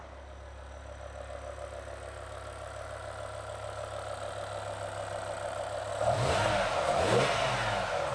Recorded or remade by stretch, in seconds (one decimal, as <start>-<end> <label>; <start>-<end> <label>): 0.0-8.1 recorded